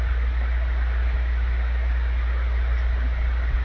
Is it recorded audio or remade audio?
recorded